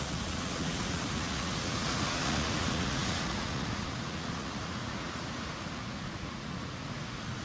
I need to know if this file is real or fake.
fake